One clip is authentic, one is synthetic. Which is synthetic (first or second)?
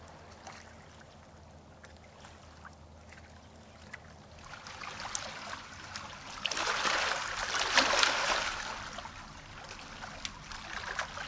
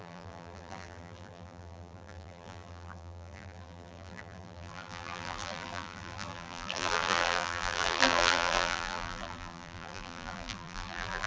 second